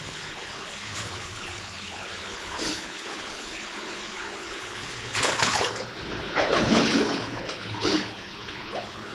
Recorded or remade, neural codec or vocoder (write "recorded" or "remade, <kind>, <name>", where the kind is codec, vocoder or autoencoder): remade, codec, HILCodec